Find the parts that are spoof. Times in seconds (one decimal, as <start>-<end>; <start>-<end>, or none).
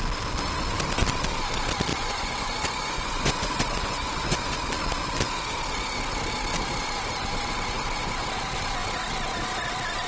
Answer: 1.9-4.6